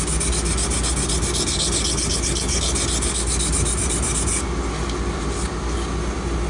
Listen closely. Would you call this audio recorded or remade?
recorded